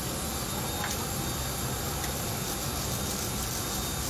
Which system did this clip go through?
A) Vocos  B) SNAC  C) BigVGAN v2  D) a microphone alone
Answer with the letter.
D